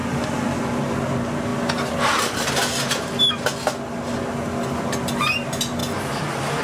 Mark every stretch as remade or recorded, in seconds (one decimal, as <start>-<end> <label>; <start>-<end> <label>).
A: 0.0-6.6 recorded